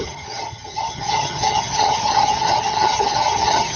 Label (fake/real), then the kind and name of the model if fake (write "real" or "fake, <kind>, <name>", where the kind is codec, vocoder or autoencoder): fake, vocoder, HiFi-GAN